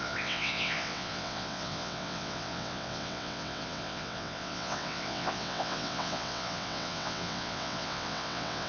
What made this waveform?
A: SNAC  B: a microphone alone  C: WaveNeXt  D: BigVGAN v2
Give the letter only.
C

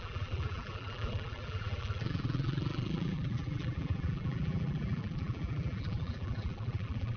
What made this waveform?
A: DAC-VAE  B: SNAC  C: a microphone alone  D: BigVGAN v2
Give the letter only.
D